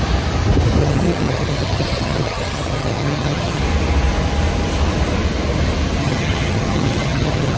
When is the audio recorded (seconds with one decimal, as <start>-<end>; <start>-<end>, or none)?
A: 0.0-0.8; 3.6-6.0